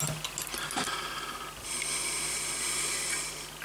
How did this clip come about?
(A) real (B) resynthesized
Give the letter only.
A